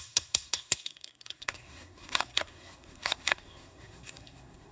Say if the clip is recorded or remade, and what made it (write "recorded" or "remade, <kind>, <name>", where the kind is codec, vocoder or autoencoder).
remade, codec, SNAC